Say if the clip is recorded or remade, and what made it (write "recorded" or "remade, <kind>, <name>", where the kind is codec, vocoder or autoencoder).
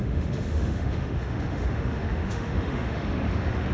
remade, autoencoder, DAC-VAE